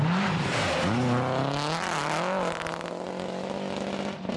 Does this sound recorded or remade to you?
recorded